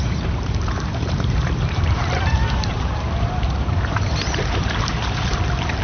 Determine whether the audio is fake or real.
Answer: fake